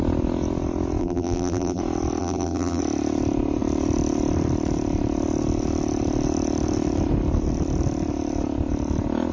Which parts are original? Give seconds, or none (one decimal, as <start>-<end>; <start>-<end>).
0.0-1.0; 1.8-2.2; 2.8-9.3